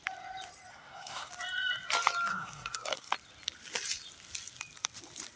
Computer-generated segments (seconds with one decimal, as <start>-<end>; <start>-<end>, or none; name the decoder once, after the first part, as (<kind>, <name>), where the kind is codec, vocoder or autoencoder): 0.7-1.3 (codec, SNAC); 2.3-3.1